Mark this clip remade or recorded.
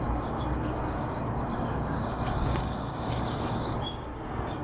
remade